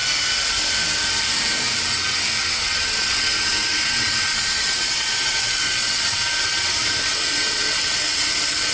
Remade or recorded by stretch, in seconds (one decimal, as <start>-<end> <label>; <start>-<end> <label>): 0.0-2.4 recorded; 2.4-8.7 remade